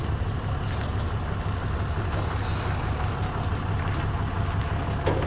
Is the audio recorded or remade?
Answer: recorded